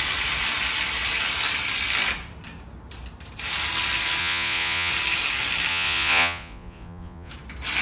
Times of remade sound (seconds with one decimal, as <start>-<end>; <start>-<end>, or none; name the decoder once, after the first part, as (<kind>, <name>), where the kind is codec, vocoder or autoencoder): 4.2-4.9 (vocoder, Vocos); 5.7-7.3